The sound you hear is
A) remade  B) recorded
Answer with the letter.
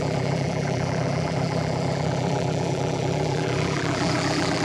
A